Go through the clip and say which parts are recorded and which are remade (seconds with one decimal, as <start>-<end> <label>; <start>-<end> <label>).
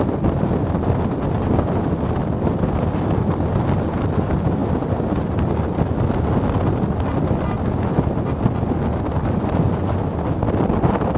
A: 0.0-11.2 recorded